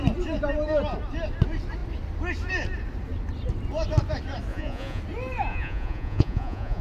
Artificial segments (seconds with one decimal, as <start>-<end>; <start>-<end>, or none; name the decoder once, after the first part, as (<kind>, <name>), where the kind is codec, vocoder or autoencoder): 4.5-5.0 (vocoder, Vocos); 5.5-6.8